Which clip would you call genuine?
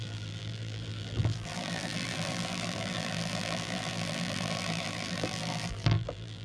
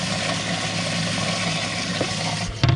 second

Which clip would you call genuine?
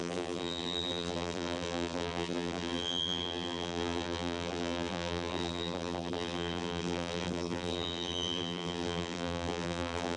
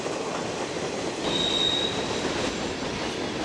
second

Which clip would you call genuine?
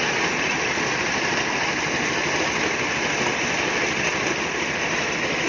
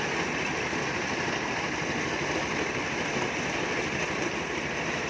first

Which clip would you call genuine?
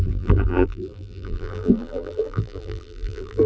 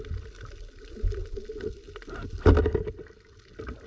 second